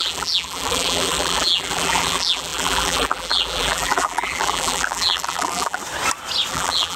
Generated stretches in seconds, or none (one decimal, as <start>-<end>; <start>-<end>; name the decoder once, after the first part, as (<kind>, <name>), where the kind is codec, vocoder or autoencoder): 0.0-5.8 (vocoder, BigVGAN v2); 6.5-7.0